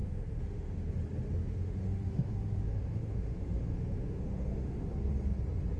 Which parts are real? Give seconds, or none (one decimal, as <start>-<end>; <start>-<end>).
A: 0.9-1.4; 4.9-5.8